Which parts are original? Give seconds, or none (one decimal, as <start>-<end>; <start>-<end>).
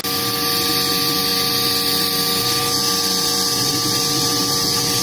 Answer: 0.0-3.7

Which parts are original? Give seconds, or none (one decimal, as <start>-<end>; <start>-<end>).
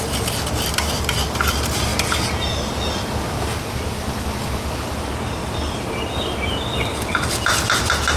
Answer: 0.0-8.2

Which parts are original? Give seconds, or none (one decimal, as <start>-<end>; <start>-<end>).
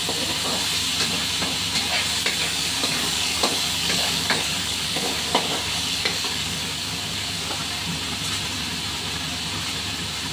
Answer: 0.0-2.4; 7.5-10.3